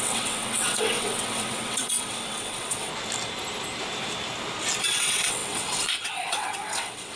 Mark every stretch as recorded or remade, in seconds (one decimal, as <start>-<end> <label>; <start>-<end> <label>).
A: 0.0-2.9 remade; 2.9-4.8 recorded; 4.8-7.2 remade